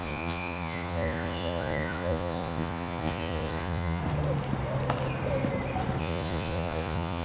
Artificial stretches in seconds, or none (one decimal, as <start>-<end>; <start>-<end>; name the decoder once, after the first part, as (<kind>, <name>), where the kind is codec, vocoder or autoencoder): 0.0-4.0 (vocoder, Vocos); 6.0-7.2